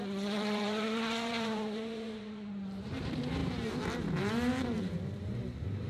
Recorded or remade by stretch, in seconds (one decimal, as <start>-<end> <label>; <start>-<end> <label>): 0.0-5.9 remade